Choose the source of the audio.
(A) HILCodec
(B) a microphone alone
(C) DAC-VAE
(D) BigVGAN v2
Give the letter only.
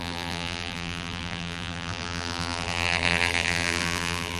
D